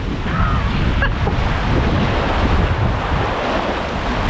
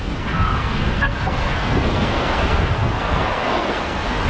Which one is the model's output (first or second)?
second